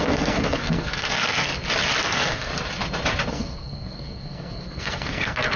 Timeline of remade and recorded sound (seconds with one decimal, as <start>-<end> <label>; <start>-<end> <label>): 0.0-1.5 remade; 1.5-2.0 recorded; 2.0-2.5 remade; 2.5-3.3 recorded; 3.3-5.6 remade